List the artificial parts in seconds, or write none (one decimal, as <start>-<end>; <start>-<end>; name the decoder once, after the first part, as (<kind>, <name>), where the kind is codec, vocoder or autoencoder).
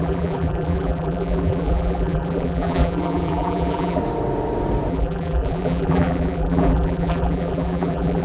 0.0-4.0 (vocoder, BigVGAN v2); 4.9-8.2